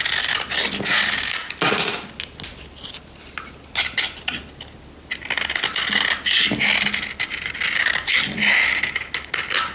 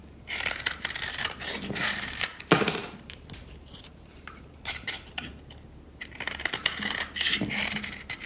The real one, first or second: first